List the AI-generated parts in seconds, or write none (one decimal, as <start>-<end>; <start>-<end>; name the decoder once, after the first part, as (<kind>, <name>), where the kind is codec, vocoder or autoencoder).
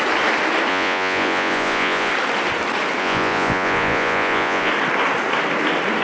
0.7-2.1 (vocoder, Vocos); 3.0-4.7